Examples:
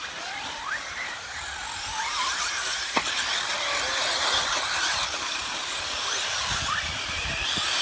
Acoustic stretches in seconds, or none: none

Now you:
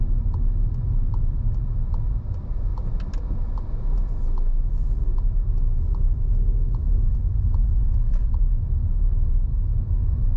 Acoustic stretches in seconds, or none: 0.0-10.4

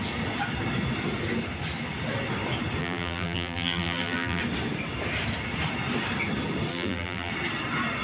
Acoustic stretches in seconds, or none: 0.0-2.8; 4.4-6.7; 7.3-8.0

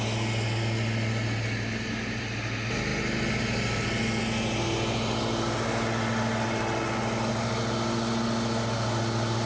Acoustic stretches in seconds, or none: 0.0-9.5